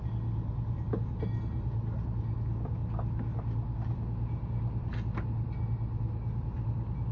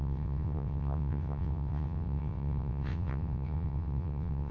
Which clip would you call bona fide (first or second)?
first